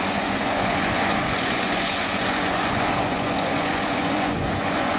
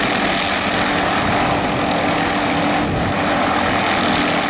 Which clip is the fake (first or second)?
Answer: first